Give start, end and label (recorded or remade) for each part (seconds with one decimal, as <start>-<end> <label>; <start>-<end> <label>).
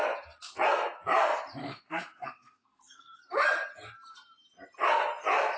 0.0-1.6 recorded; 1.6-3.2 remade; 3.2-5.6 recorded